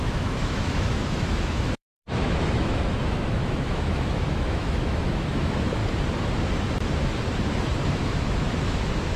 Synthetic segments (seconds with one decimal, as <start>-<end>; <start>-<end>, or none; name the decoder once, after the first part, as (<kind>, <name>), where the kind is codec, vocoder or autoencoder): 0.0-5.8 (autoencoder, DAC-VAE); 7.9-9.2